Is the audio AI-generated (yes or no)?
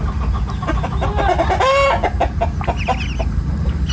no